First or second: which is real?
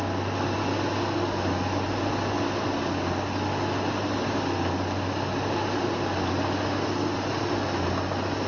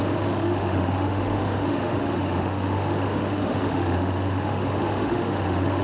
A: first